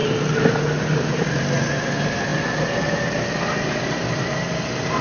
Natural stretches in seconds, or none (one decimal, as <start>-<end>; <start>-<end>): 0.0-5.0